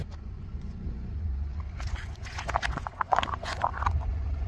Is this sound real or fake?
fake